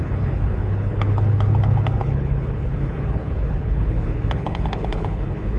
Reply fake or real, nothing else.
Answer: fake